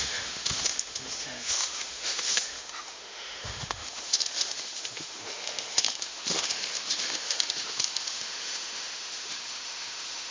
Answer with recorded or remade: remade